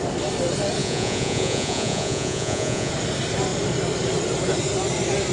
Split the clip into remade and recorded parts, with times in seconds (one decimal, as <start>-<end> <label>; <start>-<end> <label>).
0.0-0.8 recorded; 0.8-2.9 remade; 2.9-5.3 recorded